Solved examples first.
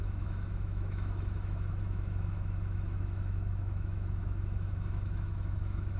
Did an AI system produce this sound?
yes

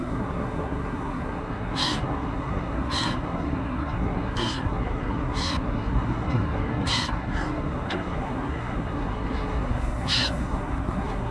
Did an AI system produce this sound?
yes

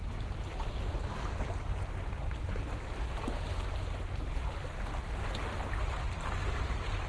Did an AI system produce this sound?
no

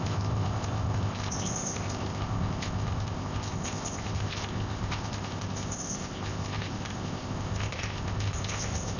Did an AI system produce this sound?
yes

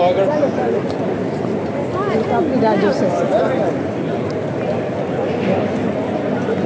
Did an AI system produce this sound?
no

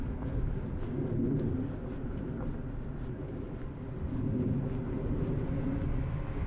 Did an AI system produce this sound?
no